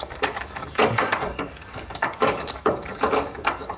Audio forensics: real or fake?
fake